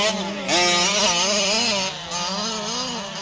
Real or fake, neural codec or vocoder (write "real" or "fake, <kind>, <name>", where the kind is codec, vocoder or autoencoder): real